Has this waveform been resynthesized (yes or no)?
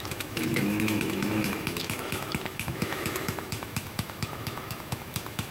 yes